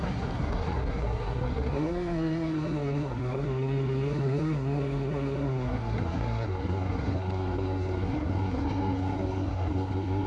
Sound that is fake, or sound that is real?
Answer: fake